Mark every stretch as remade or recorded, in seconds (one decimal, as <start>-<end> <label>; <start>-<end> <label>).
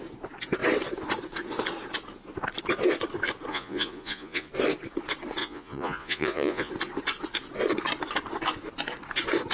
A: 0.0-3.5 recorded; 3.5-4.5 remade; 4.5-5.4 recorded; 5.4-6.7 remade; 6.7-9.5 recorded